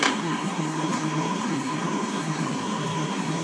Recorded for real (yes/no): no